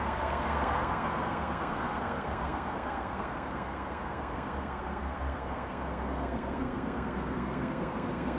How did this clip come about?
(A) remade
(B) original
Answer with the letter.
A